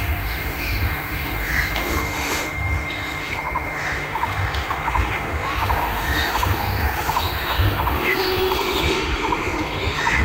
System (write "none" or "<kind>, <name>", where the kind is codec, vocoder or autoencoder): autoencoder, DAC-VAE